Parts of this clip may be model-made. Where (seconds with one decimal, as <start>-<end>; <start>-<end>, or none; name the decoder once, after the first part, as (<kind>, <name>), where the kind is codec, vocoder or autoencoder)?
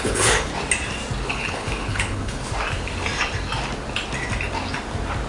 0.0-0.5 (codec, HILCodec); 1.3-2.4